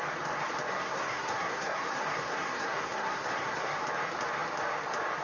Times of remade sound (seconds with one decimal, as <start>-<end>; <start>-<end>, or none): 0.7-3.8